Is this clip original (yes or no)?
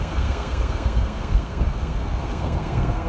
no